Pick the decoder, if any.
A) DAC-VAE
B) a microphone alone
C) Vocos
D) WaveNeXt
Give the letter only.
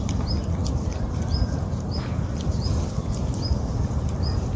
B